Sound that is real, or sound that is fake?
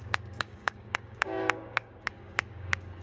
fake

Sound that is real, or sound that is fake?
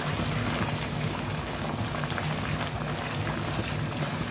real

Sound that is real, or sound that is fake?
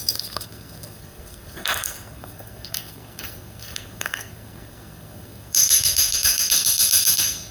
fake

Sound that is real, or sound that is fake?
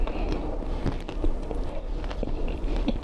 real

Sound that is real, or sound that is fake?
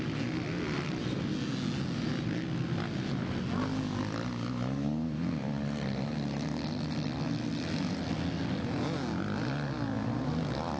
real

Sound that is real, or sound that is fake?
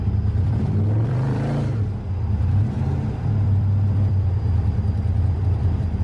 fake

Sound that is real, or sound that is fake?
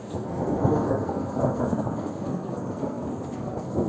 fake